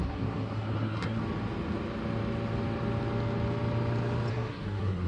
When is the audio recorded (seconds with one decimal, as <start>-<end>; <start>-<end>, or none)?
1.2-4.3